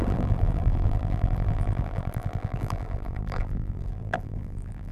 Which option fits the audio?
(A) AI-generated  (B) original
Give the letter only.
A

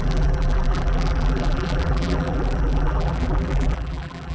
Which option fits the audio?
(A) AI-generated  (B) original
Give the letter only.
A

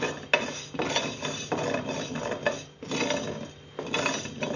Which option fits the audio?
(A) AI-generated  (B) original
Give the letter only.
B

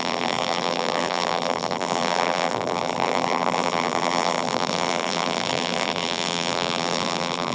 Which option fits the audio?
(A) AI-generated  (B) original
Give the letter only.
A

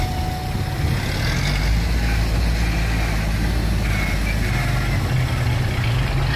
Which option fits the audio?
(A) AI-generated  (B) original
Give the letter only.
B